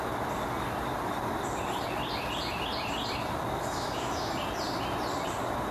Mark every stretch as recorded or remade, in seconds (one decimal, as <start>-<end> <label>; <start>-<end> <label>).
0.0-3.6 recorded; 3.6-4.3 remade; 4.3-5.7 recorded

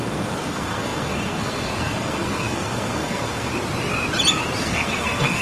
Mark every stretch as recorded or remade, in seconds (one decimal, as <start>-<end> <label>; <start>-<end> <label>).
0.0-3.5 remade; 3.5-4.6 recorded; 4.6-5.4 remade

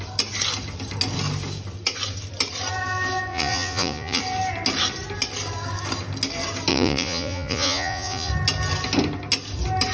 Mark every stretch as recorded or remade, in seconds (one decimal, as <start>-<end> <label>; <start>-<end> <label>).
0.0-3.3 recorded; 3.3-4.2 remade; 4.2-6.7 recorded; 6.7-8.3 remade; 8.3-9.9 recorded

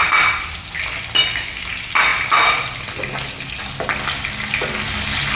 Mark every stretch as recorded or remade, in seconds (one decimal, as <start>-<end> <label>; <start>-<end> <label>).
0.0-5.4 recorded